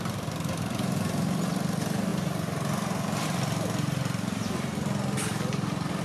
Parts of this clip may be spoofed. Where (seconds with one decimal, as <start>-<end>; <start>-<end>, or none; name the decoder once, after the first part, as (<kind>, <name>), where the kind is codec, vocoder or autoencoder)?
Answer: none